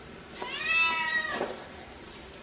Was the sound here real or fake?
real